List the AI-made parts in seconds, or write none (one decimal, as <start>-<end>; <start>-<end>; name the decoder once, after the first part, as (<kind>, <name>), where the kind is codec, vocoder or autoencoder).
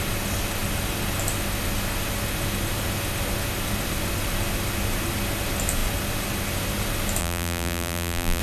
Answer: 7.2-8.4 (vocoder, BigVGAN v2)